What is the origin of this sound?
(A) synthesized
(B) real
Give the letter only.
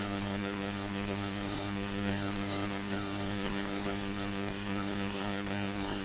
A